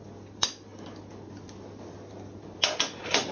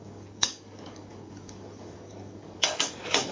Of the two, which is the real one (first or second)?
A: first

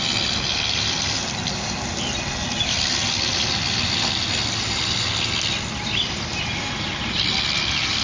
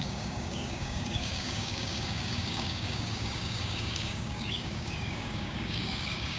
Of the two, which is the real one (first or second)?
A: first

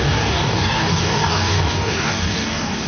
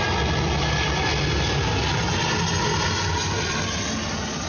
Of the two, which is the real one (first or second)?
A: second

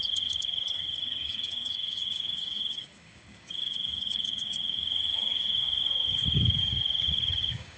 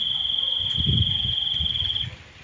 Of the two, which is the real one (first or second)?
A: second